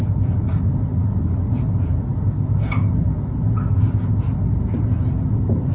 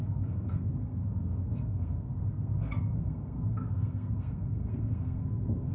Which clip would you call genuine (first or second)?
first